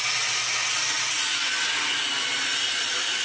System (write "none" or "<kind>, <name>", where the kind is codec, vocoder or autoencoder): none